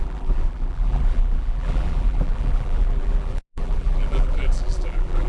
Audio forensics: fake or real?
fake